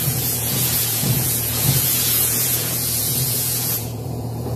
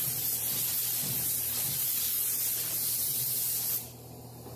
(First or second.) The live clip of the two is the second